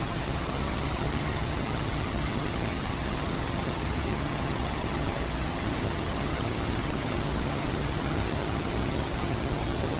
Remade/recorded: remade